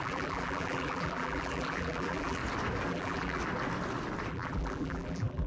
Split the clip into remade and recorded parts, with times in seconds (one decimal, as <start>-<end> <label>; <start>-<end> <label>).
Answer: 0.0-2.4 remade; 2.4-2.9 recorded; 2.9-3.4 remade; 3.4-4.3 recorded; 4.3-5.5 remade